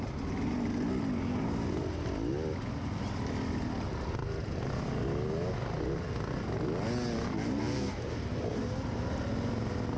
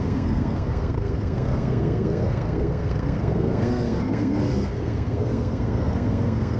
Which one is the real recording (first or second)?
first